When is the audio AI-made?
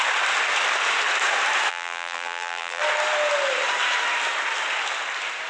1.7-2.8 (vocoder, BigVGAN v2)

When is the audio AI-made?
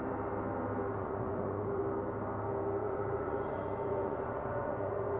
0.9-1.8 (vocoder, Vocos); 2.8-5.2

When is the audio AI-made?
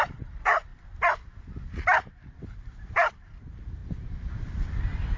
none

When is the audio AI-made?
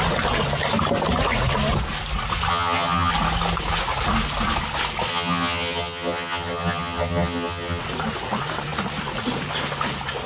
2.5-3.1 (vocoder, HiFi-GAN); 5.1-7.8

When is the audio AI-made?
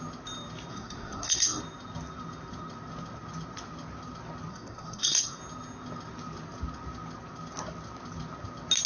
0.7-1.6 (codec, SNAC); 4.5-5.4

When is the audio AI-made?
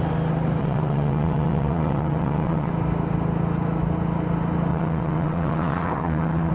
0.6-2.7 (vocoder, WaveNeXt); 4.7-6.5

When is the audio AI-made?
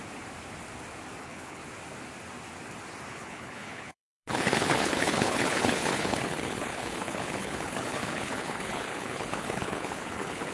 1.2-1.6 (codec, HILCodec); 3.1-10.5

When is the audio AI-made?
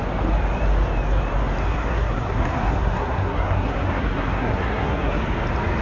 1.7-5.2 (codec, SNAC)